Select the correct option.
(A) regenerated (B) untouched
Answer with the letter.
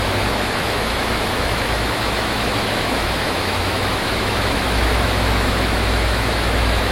A